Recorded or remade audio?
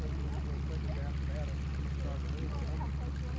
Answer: recorded